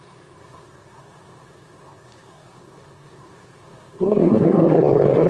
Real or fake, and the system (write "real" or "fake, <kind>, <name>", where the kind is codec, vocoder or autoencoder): fake, codec, SNAC